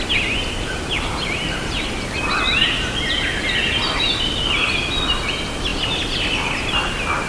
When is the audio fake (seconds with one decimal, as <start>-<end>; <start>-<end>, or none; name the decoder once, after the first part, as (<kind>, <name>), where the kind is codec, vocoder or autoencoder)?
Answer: none